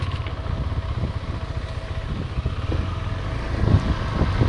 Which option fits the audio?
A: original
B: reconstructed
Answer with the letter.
A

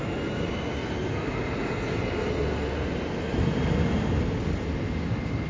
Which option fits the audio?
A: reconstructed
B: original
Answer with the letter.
B